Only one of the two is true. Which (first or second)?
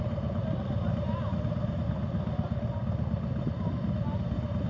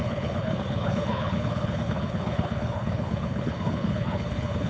first